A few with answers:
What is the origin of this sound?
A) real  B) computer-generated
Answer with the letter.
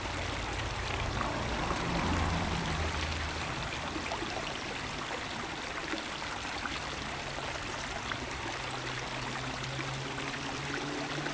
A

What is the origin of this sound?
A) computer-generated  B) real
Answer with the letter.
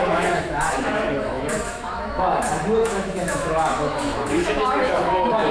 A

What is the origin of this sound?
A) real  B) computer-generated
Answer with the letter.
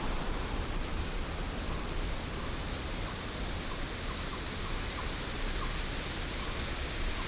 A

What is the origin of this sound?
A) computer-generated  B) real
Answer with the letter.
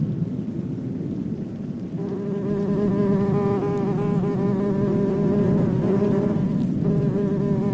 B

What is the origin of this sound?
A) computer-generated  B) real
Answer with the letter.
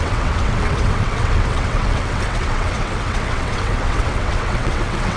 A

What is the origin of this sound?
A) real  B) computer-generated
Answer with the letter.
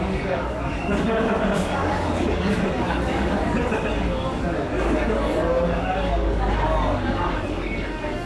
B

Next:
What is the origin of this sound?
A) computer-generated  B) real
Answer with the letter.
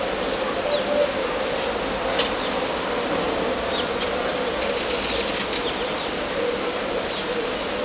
B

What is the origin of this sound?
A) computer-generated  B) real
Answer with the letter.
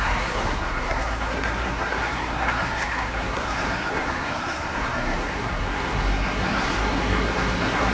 A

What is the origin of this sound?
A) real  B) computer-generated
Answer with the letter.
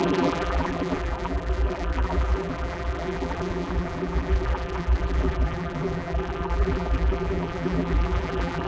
B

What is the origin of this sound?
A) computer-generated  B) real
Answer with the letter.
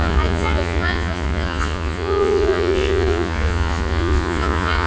A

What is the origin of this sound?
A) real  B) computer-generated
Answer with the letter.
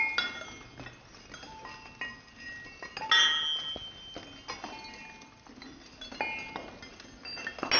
A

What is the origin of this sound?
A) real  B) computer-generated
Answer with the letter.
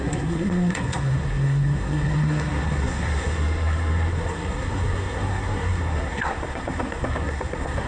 B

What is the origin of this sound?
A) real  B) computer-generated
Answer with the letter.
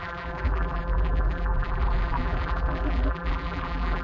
B